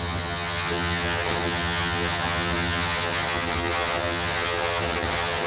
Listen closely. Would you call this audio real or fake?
fake